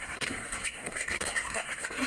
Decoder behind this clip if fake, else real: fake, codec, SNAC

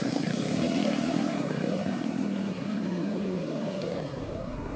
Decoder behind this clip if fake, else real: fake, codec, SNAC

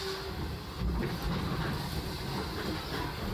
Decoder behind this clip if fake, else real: real